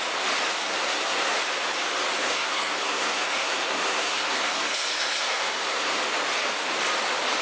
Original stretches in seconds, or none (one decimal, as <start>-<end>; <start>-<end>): 0.0-0.6; 1.4-2.2; 6.0-7.4